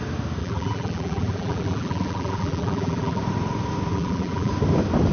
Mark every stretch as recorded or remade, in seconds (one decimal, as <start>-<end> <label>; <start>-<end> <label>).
0.0-0.4 recorded; 0.4-3.2 remade; 3.2-3.9 recorded; 3.9-4.5 remade; 4.5-5.1 recorded